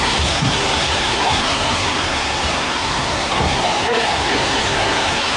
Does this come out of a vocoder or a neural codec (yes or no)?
yes